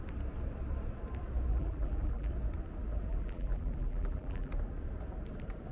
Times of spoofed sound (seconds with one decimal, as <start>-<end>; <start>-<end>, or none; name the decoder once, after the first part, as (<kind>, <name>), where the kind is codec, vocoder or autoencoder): 1.5-2.3 (vocoder, BigVGAN v2); 3.1-4.5

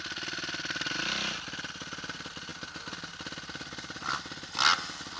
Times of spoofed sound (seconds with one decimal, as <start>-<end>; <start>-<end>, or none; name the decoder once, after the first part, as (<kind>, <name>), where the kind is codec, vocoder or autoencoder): 2.5-4.1 (vocoder, BigVGAN v2)

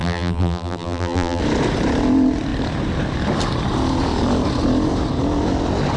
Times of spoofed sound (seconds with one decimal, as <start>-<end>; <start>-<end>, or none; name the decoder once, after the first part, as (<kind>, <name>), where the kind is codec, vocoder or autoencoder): 0.0-1.4 (vocoder, BigVGAN v2)

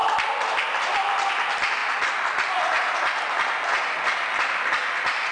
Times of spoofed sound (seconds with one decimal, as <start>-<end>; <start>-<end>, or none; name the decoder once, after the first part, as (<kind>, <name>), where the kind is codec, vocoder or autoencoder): none

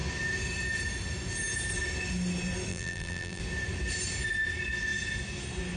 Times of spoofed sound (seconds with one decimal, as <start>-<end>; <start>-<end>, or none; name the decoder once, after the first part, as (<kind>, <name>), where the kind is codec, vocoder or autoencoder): 2.7-3.4 (vocoder, BigVGAN v2)

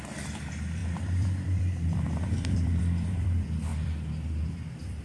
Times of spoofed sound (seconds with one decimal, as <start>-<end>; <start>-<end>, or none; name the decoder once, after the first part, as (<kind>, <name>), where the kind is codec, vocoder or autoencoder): 0.0-5.0 (vocoder, BigVGAN v2)